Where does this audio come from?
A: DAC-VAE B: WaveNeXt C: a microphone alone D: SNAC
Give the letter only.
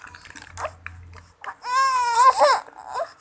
C